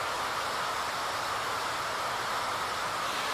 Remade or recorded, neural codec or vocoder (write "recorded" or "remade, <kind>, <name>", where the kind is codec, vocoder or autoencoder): recorded